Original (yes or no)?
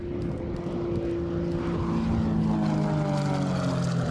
yes